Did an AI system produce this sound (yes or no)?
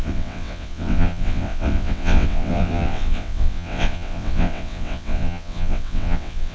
yes